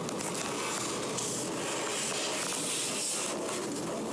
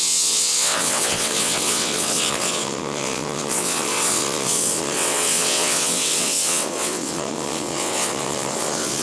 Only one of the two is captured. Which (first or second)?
first